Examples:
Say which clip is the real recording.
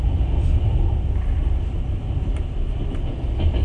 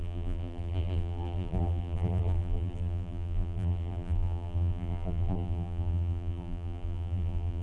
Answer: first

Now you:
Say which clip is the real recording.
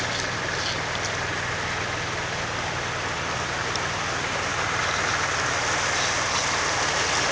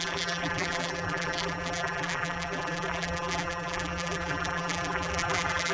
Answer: first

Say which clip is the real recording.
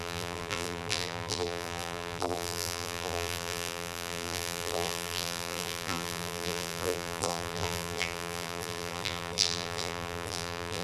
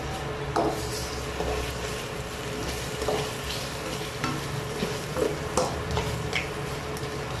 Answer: second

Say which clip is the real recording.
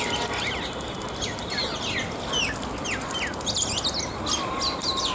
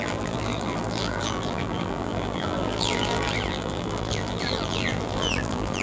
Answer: first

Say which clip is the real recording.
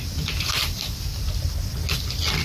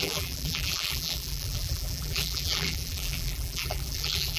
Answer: first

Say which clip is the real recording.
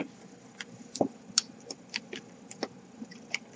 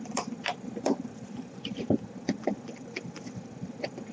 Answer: first